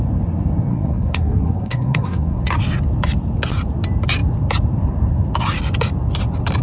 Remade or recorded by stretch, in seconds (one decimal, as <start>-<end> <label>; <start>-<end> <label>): 0.0-0.7 recorded; 0.7-2.4 remade; 2.4-6.6 recorded